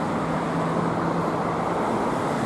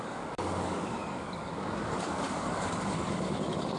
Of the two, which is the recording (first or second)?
first